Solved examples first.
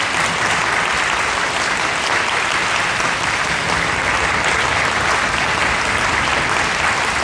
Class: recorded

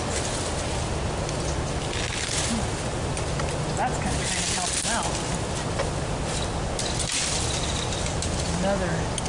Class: recorded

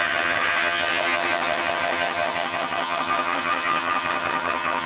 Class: remade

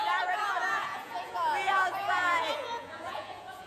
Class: remade